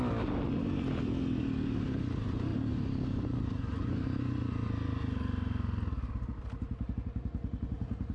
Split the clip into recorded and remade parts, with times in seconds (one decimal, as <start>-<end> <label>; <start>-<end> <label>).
0.0-2.5 recorded; 2.5-4.2 remade; 4.2-8.1 recorded